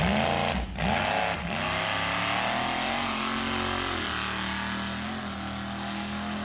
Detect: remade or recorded recorded